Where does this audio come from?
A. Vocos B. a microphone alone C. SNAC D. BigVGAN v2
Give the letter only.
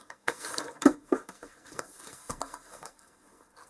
C